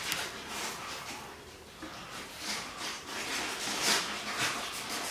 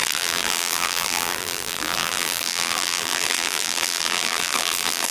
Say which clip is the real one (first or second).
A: first